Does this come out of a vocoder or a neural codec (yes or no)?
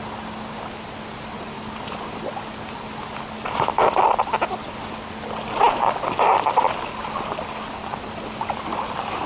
no